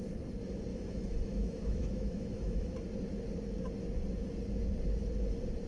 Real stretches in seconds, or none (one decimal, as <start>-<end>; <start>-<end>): 0.0-0.7; 2.7-5.7